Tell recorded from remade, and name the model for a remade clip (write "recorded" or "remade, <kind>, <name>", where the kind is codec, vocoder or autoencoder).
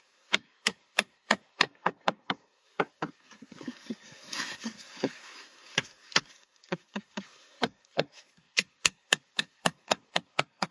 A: remade, codec, SNAC